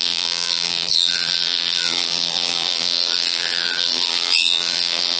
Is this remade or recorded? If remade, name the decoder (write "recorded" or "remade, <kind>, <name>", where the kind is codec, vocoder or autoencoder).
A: remade, vocoder, BigVGAN v2